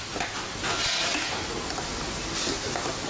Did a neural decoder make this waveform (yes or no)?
no